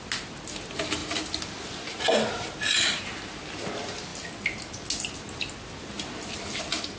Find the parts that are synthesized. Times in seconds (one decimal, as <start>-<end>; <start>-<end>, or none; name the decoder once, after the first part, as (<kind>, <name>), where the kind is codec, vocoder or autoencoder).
none